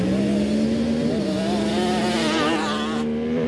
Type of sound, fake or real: real